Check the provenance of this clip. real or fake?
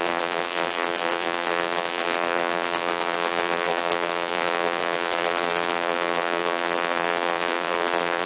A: fake